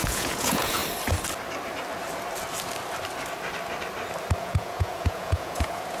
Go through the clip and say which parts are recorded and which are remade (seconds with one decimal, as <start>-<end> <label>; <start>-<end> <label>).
0.0-0.8 remade; 0.8-4.4 recorded; 4.4-6.0 remade